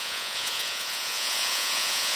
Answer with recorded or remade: remade